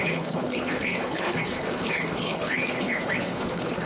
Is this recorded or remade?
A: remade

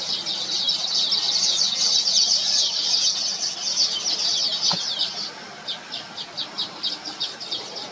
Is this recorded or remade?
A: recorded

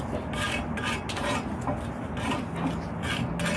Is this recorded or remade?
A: recorded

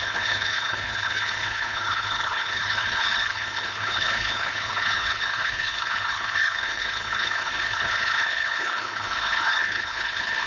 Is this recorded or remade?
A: remade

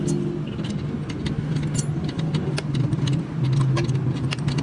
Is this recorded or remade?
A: recorded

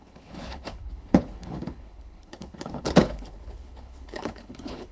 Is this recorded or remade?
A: remade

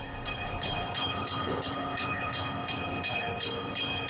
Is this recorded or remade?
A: remade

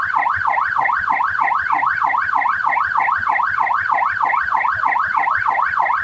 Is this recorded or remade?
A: recorded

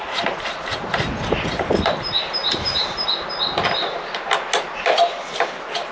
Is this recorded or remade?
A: recorded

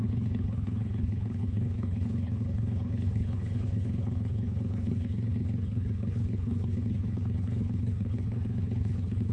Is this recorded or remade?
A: remade